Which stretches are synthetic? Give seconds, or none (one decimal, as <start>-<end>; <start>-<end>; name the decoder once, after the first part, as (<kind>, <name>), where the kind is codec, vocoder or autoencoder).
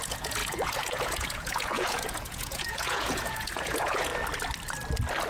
0.0-4.1 (vocoder, Vocos)